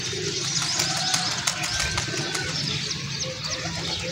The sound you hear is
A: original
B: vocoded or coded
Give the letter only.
A